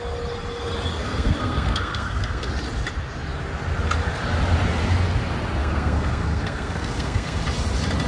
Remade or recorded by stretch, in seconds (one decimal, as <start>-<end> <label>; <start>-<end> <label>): 0.0-0.9 recorded; 0.9-2.5 remade; 2.5-5.6 recorded; 5.6-7.4 remade; 7.4-8.1 recorded